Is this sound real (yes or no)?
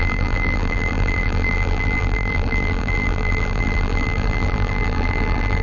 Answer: no